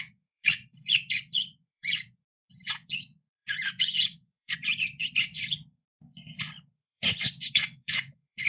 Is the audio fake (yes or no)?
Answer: yes